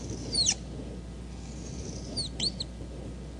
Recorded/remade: recorded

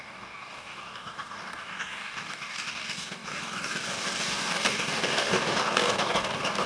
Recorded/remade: remade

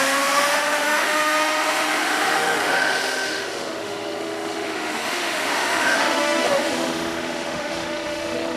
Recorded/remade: remade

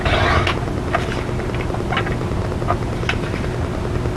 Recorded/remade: recorded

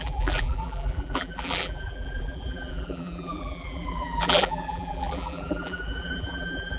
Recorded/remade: remade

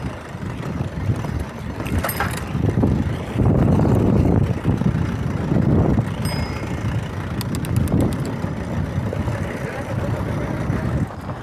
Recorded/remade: recorded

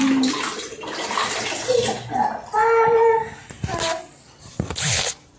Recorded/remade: recorded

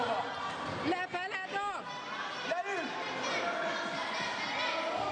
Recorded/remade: recorded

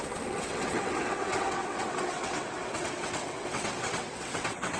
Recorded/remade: remade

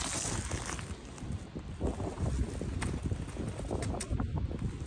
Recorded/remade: recorded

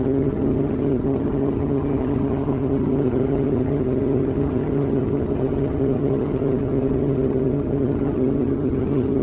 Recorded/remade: remade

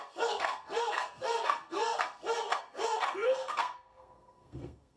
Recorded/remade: remade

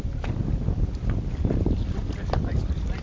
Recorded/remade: recorded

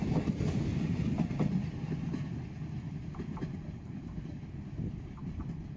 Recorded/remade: recorded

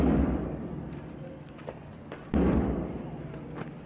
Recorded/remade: recorded